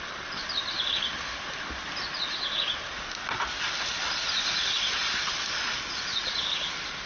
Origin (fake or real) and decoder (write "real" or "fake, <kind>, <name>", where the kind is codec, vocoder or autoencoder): real